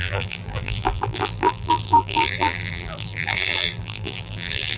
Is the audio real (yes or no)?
no